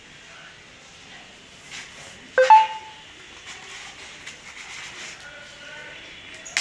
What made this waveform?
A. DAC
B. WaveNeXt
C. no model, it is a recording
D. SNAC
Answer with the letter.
C